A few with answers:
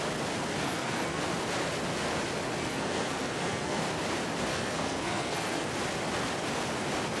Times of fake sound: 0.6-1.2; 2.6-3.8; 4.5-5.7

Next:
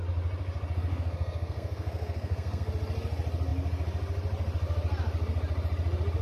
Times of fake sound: 0.9-2.7

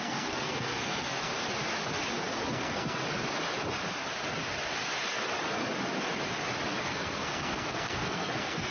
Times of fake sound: 0.0-1.3; 2.5-3.0; 6.8-8.7

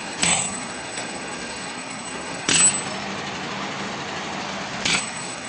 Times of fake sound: 0.0-2.5; 5.0-5.5

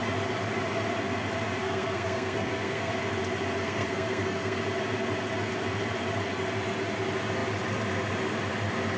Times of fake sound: 1.6-2.9; 3.6-4.6

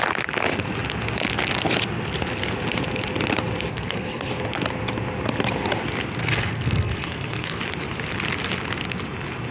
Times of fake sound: 3.7-4.3; 6.2-7.6

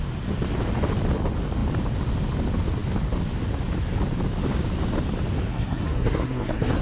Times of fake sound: 5.5-6.8